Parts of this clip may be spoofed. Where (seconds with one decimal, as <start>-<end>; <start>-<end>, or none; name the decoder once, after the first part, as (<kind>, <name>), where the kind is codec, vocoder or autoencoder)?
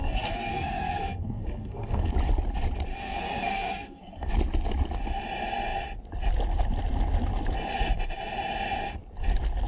0.0-2.1 (codec, SNAC); 2.9-4.3